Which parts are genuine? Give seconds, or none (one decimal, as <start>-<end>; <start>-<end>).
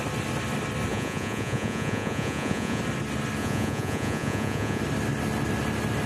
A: 0.0-0.9; 2.8-3.4; 4.8-6.1